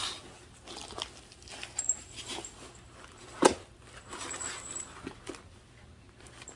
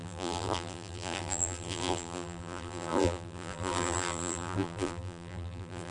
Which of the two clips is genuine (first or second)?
first